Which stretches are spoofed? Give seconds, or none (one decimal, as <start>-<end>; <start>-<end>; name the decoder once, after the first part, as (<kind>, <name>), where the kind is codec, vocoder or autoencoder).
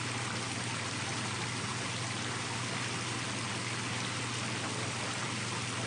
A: none